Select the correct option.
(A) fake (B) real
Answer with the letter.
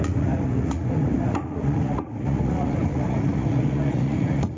A